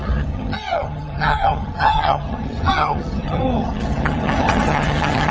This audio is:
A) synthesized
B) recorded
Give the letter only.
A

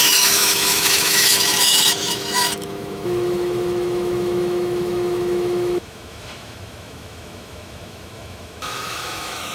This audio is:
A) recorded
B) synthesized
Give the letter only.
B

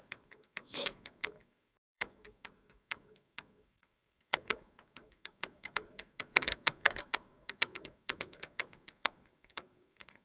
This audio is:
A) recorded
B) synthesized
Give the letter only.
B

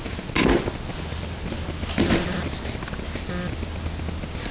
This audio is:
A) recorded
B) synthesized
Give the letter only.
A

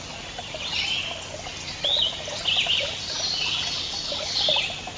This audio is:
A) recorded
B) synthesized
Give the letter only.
A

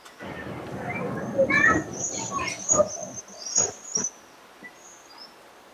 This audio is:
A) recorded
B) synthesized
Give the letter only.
A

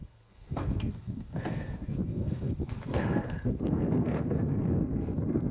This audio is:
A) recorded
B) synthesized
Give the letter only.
B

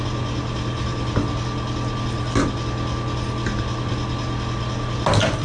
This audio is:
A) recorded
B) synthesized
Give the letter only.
A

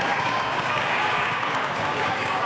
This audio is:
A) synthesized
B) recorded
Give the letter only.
A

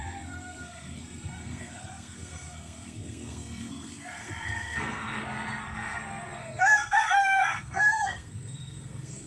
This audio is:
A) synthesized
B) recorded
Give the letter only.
A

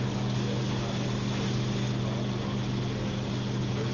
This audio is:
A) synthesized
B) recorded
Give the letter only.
B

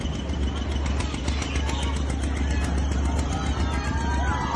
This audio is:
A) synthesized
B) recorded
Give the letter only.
B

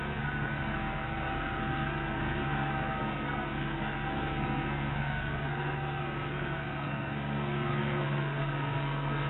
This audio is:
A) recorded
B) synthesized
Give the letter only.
B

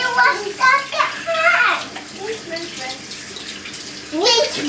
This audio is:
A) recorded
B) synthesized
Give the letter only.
A